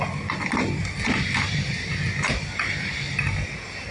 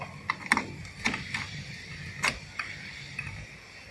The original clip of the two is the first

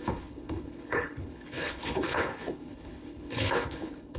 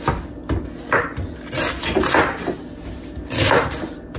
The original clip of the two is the second